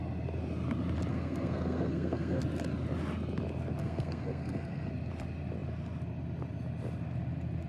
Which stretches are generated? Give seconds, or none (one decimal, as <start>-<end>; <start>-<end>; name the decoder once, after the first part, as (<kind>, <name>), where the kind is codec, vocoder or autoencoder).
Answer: 1.1-2.4 (codec, SNAC); 3.8-4.9